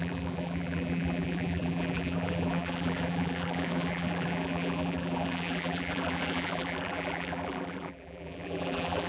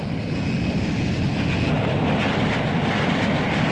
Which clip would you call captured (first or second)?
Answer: second